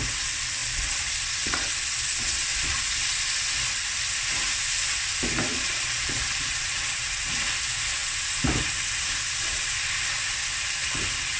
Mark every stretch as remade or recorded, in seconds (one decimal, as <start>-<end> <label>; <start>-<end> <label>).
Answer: 0.0-0.6 recorded; 0.6-2.8 remade; 2.8-5.5 recorded; 5.5-7.2 remade; 7.2-11.4 recorded